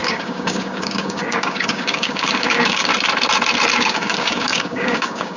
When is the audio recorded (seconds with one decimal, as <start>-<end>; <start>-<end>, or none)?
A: 2.9-3.7